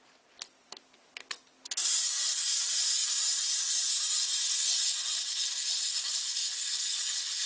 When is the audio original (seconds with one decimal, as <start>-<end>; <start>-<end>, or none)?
0.0-7.5